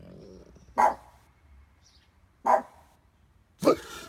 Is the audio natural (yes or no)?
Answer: no